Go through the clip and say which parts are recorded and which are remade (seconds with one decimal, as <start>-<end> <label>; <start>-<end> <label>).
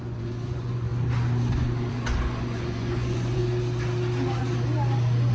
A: 0.0-0.9 remade; 0.9-1.9 recorded; 1.9-3.4 remade; 3.4-5.3 recorded